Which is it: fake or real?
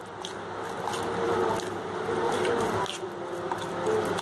real